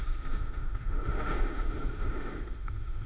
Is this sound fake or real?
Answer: fake